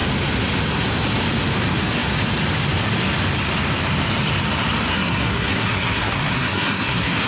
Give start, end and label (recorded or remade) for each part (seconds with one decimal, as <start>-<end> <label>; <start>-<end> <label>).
0.0-4.9 recorded; 4.9-7.3 remade